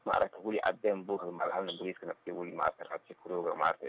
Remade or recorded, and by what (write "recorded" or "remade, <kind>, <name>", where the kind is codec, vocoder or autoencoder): recorded